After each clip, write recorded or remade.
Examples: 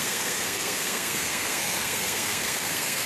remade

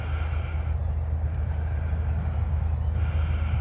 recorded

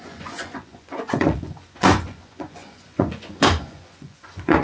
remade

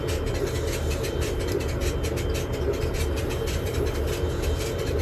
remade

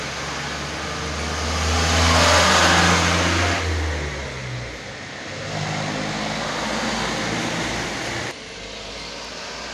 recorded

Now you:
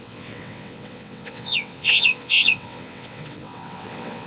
remade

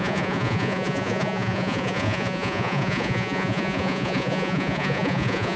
remade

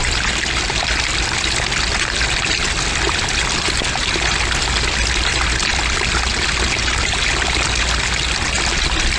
recorded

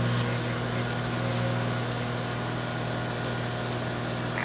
recorded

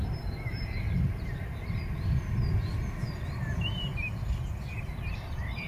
recorded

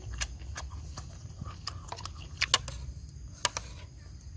recorded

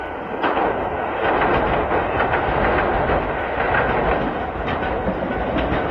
recorded